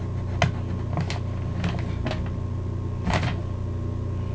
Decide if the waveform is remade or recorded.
recorded